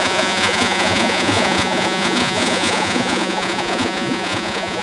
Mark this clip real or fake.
fake